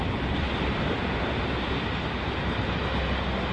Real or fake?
real